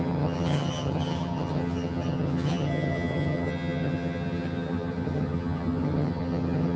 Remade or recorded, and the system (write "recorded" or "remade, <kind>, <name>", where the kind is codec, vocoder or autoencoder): remade, vocoder, HiFi-GAN